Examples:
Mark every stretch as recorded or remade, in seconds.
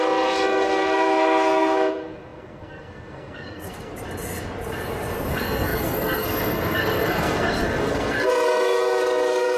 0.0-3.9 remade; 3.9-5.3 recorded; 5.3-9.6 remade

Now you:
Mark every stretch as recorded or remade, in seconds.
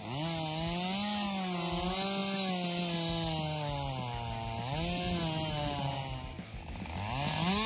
0.0-7.7 recorded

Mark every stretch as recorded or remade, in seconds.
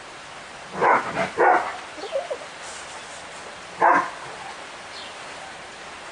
0.0-6.1 recorded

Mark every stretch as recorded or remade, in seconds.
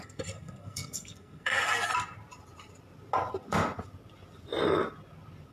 0.0-1.9 remade; 1.9-5.5 recorded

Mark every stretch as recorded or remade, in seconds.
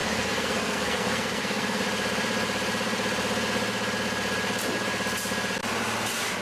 0.0-1.8 remade; 1.8-6.4 recorded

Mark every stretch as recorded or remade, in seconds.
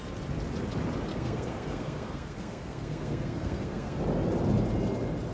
0.0-1.1 recorded; 1.1-4.0 remade; 4.0-5.3 recorded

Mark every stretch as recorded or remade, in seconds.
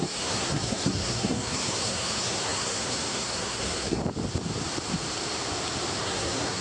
0.0-4.0 remade; 4.0-6.0 recorded; 6.0-6.6 remade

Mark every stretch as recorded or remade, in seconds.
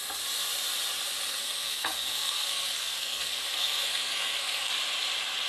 0.0-1.4 recorded; 1.4-4.7 remade; 4.7-5.5 recorded